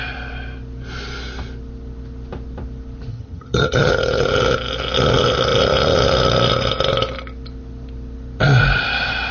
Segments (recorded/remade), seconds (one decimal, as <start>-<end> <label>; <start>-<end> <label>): 0.0-3.1 recorded; 3.1-3.9 remade; 3.9-9.3 recorded